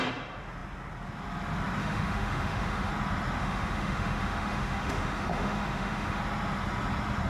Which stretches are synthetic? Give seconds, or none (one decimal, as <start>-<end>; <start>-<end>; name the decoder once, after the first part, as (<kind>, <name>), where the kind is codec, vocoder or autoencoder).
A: 1.8-2.9 (autoencoder, DAC-VAE); 3.4-6.2